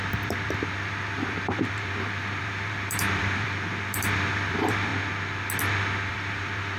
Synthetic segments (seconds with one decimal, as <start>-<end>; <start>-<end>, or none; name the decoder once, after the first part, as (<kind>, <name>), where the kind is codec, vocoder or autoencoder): 0.0-4.9 (vocoder, BigVGAN v2); 6.1-6.8